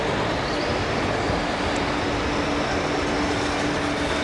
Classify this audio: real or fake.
real